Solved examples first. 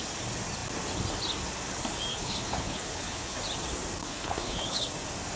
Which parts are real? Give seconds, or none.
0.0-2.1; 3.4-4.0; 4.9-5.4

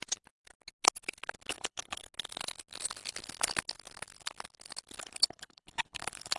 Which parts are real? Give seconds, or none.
0.0-1.5; 2.0-5.0